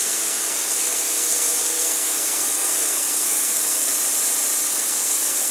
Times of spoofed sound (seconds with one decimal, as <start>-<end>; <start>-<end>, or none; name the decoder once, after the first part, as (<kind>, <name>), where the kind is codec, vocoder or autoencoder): 0.0-3.9 (codec, SNAC); 4.7-5.5